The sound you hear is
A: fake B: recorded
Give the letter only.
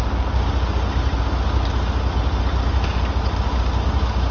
B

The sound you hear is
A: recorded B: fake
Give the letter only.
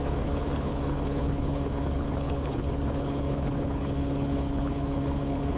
B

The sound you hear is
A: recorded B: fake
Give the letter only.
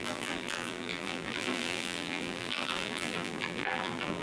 B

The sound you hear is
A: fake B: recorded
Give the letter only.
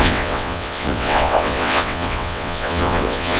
A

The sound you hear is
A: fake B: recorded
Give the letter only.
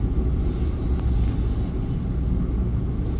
B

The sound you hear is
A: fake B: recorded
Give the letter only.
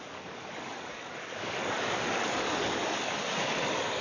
A